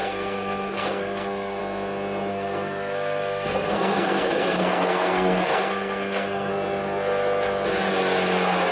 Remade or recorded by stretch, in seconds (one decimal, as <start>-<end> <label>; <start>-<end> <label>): 0.0-1.6 remade; 1.6-2.3 recorded; 2.3-6.5 remade; 6.5-8.7 recorded